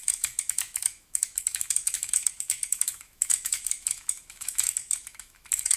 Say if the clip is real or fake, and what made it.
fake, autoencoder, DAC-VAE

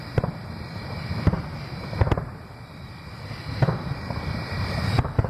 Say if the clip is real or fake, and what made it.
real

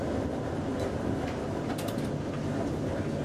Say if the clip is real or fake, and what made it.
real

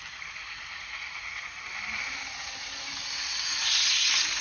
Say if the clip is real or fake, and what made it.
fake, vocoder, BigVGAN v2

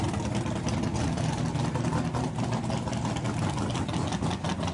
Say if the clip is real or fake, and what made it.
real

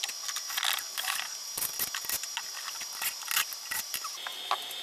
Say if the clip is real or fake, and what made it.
real